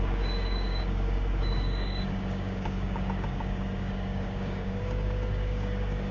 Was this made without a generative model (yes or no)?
no